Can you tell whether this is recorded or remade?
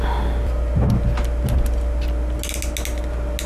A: recorded